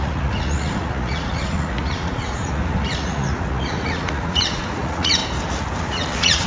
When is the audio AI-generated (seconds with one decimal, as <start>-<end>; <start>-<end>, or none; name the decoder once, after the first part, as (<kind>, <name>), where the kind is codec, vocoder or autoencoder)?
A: 0.0-5.2 (vocoder, Vocos); 5.8-6.5